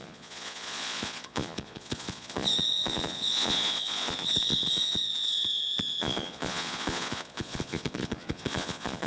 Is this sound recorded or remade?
remade